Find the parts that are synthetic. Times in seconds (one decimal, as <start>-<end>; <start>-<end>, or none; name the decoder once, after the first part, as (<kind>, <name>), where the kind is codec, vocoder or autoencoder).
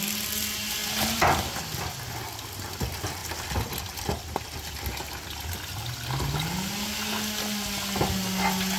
none